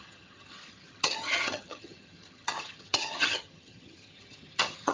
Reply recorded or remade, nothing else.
remade